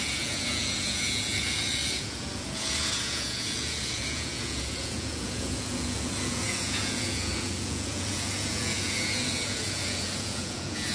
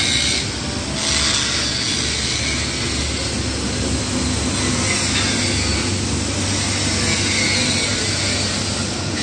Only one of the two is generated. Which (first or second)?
first